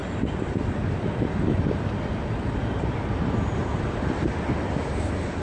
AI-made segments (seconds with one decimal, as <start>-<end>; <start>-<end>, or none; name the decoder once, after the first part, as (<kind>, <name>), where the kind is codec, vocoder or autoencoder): 0.0-3.2 (vocoder, BigVGAN v2); 3.6-4.3